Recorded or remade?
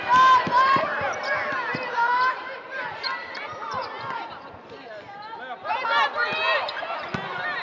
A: recorded